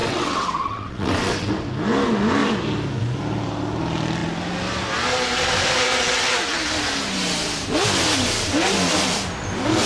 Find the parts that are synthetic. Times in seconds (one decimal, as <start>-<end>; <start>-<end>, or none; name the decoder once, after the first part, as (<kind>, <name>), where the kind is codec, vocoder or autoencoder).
0.0-1.5 (vocoder, WaveNeXt)